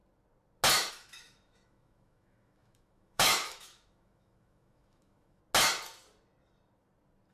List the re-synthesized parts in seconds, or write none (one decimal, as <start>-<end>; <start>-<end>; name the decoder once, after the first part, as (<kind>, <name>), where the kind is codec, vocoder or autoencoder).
0.9-5.4 (autoencoder, DAC-VAE)